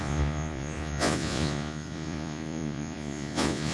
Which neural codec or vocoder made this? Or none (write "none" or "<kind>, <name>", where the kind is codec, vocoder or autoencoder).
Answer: vocoder, Vocos